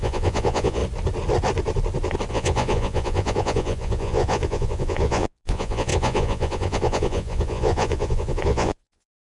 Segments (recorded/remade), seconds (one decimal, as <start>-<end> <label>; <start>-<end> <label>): 0.0-0.8 remade; 0.8-2.3 recorded; 2.3-9.3 remade